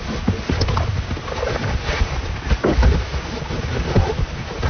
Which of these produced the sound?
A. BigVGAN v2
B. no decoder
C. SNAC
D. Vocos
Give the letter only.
B